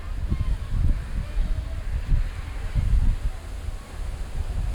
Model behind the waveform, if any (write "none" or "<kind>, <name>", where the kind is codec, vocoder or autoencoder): none